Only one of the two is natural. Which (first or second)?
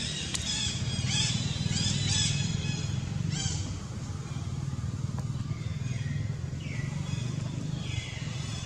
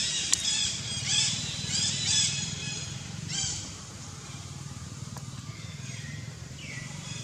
first